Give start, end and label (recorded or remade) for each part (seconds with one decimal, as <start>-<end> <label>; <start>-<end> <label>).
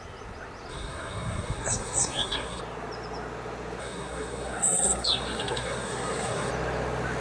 0.0-0.7 recorded; 0.7-2.6 remade; 2.6-3.8 recorded; 3.8-6.5 remade; 6.5-7.2 recorded